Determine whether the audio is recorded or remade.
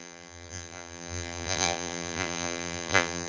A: remade